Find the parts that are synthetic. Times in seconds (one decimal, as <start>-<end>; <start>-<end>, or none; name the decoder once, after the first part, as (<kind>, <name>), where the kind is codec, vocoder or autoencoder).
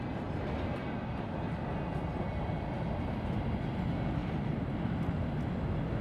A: none